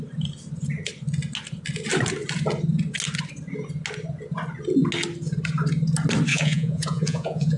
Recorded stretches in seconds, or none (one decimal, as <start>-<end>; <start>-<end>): 0.0-6.3